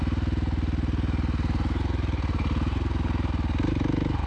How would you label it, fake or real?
real